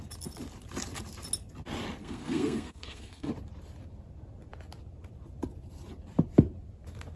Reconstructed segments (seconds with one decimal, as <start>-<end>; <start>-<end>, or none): 2.0-3.3